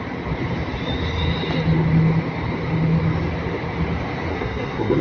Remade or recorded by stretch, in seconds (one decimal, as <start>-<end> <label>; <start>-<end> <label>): 0.0-4.3 recorded; 4.3-5.0 remade